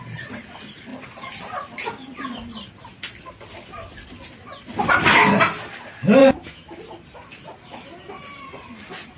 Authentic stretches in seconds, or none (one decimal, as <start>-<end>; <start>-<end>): 0.0-6.2; 6.8-9.2